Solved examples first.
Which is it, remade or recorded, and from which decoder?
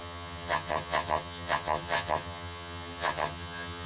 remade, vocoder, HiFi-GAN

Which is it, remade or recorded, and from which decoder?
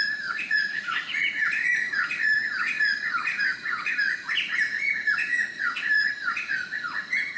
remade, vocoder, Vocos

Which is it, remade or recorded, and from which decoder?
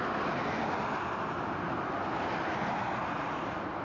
recorded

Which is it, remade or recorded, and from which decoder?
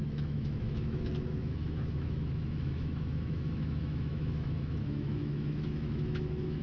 remade, autoencoder, DAC-VAE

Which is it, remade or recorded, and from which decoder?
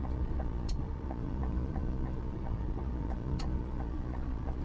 remade, vocoder, Vocos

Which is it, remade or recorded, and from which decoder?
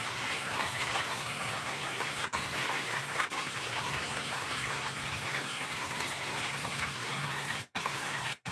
remade, codec, SNAC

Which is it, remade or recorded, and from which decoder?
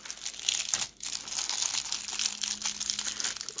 recorded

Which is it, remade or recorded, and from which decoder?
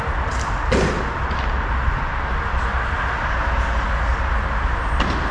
recorded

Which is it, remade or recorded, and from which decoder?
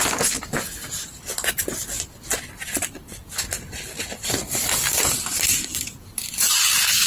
recorded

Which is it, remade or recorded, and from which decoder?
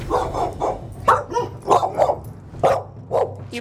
recorded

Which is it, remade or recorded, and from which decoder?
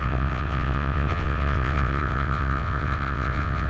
remade, vocoder, WaveNeXt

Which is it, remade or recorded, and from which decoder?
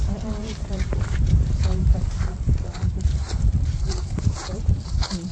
remade, vocoder, BigVGAN v2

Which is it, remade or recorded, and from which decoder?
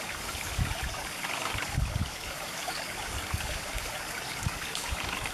remade, codec, DAC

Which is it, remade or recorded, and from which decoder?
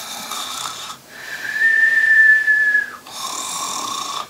remade, vocoder, BigVGAN v2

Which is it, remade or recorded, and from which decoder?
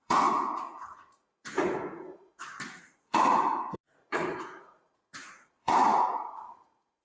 remade, vocoder, Vocos